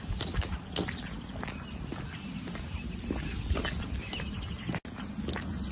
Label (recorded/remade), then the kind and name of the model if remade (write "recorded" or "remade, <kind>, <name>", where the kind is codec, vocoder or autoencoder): recorded